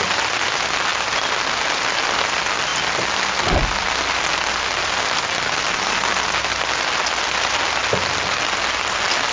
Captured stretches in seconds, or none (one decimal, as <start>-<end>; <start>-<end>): 0.0-9.3